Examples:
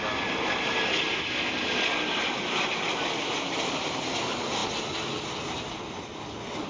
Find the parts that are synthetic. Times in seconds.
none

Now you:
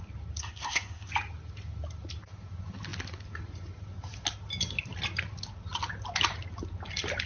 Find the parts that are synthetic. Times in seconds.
0.4-1.1 (codec, SNAC)

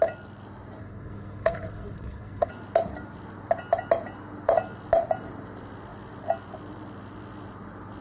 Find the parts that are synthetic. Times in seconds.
0.8-2.5 (codec, SNAC)